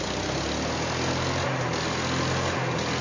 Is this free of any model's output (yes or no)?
yes